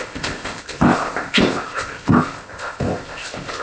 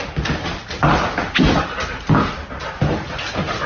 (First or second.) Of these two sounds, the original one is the second